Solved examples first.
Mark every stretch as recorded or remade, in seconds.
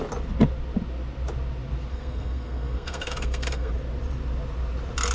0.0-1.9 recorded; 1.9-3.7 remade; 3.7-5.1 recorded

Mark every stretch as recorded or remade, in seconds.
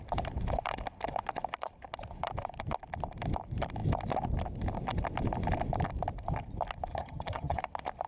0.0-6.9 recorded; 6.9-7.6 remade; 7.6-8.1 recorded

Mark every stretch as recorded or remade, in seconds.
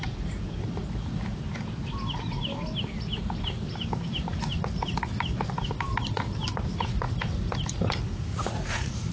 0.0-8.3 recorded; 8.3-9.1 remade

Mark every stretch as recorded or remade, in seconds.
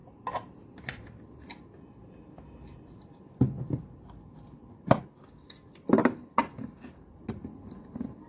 0.0-8.3 recorded